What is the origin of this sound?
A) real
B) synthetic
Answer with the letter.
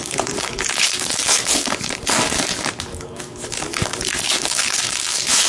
B